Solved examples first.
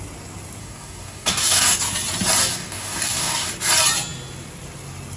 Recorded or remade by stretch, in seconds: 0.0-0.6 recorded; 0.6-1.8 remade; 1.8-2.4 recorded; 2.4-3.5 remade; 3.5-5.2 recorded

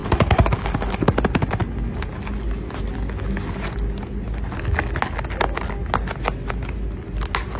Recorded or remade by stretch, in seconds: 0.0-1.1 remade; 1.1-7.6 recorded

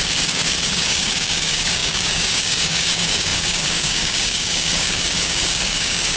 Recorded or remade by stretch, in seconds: 0.0-6.2 remade

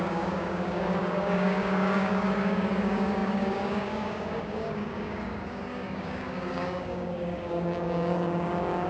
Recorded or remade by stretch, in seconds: 0.0-8.9 remade